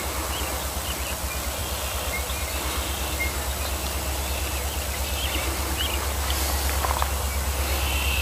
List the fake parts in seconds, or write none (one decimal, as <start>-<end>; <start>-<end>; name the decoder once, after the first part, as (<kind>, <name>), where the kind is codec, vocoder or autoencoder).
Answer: none